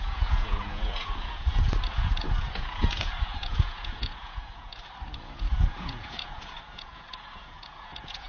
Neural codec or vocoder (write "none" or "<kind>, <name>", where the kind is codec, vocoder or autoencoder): vocoder, Vocos